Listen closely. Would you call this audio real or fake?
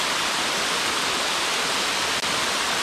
real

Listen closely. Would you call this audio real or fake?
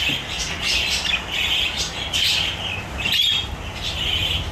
real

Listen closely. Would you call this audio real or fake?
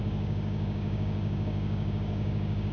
fake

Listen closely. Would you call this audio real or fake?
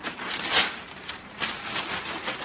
real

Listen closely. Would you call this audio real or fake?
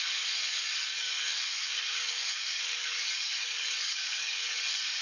fake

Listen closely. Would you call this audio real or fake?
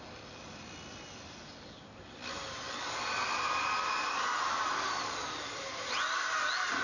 real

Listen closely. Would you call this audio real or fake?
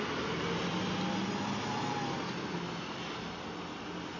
real